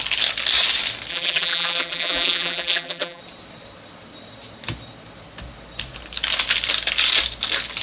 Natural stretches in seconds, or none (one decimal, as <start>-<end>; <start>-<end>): 0.0-1.1; 3.2-7.8